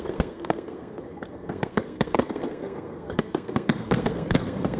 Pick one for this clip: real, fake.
fake